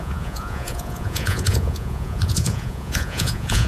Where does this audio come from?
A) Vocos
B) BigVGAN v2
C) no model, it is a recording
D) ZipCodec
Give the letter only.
A